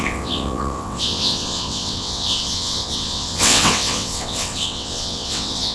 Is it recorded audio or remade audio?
remade